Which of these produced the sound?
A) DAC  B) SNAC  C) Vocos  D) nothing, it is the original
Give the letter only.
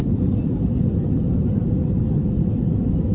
D